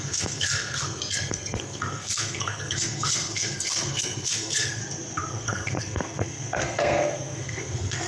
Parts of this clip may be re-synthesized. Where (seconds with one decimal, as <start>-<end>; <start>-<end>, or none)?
0.0-4.8; 5.3-8.1